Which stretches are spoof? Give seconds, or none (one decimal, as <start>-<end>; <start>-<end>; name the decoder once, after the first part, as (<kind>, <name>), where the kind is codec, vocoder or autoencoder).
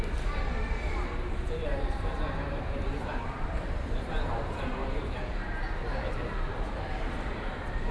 1.6-5.2 (vocoder, BigVGAN v2)